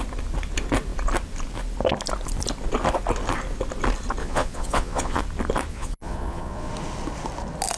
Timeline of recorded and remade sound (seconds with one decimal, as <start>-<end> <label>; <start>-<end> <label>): 0.0-4.2 recorded; 4.2-5.2 remade; 5.2-5.7 recorded; 5.7-6.7 remade; 6.7-7.8 recorded

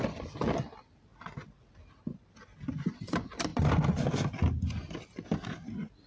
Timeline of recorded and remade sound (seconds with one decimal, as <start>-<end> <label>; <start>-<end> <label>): 0.0-6.1 recorded

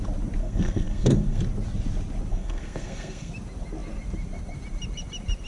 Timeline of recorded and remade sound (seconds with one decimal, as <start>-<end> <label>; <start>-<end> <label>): 0.0-0.4 recorded; 0.4-1.4 remade; 1.4-2.3 recorded; 2.3-3.3 remade; 3.3-5.5 recorded

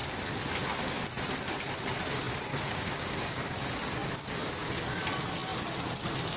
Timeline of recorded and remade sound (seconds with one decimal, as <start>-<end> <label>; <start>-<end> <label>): 0.0-2.5 recorded; 2.5-3.7 remade; 3.7-6.4 recorded